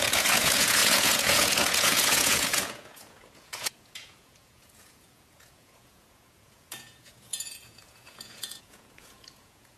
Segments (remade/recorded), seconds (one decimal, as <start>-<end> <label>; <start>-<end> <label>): 0.0-9.8 remade